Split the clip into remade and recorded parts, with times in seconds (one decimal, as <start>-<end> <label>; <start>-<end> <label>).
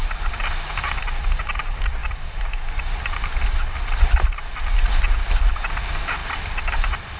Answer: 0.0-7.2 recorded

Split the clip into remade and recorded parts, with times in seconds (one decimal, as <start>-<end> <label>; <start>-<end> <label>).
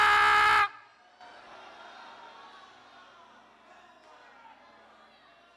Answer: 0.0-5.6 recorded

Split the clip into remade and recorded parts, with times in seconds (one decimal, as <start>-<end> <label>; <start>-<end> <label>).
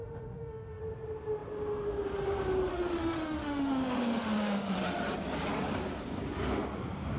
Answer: 0.0-0.8 remade; 0.8-2.7 recorded; 2.7-5.0 remade; 5.0-7.2 recorded